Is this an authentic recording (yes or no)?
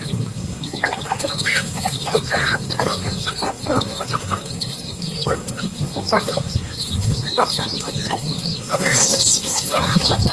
no